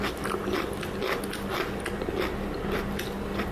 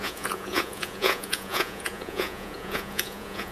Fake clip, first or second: second